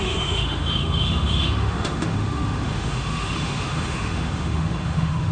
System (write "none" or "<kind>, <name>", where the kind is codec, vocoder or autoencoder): autoencoder, DAC-VAE